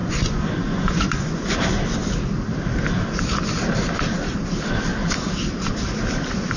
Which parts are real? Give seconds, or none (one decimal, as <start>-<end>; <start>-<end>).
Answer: 1.4-6.6